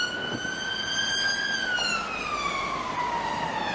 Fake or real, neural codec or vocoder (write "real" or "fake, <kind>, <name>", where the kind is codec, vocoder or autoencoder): real